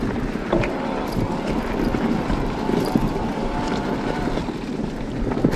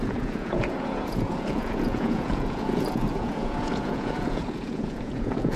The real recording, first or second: first